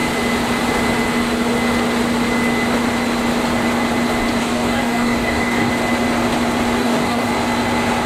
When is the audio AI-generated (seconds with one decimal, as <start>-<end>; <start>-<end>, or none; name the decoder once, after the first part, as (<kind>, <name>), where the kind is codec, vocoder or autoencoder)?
4.4-5.7 (codec, DAC); 6.8-7.3